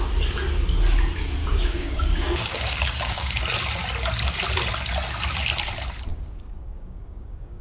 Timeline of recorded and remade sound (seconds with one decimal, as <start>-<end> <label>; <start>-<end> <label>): 0.0-1.4 recorded; 1.4-3.4 remade; 3.4-6.1 recorded; 6.1-7.6 remade